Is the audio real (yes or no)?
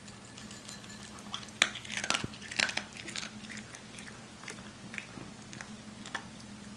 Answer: yes